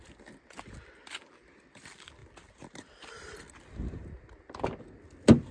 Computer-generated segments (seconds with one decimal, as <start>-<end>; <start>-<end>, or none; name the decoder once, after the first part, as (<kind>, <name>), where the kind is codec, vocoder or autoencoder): none